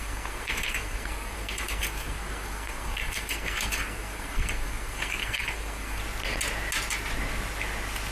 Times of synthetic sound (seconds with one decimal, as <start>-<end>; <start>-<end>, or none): 0.0-6.0